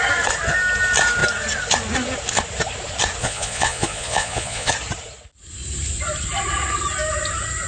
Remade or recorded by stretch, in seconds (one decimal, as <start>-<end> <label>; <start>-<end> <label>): 0.0-3.2 recorded; 3.2-4.7 remade; 4.7-7.7 recorded